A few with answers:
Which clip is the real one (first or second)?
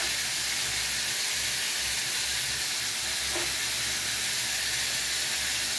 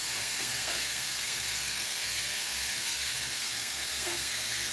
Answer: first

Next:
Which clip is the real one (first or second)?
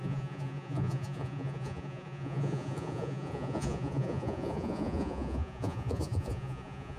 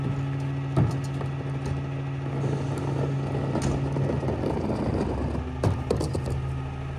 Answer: second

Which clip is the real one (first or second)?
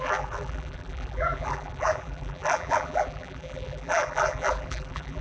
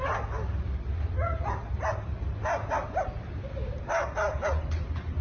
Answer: second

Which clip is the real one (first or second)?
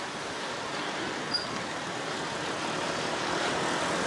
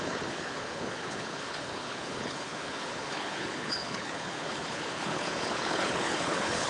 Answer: first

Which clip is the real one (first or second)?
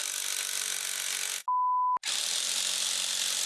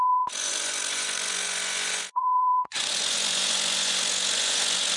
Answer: first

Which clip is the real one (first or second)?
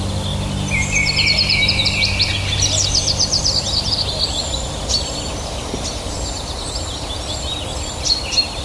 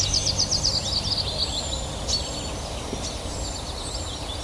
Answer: second